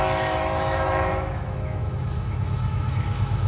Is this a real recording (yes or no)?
no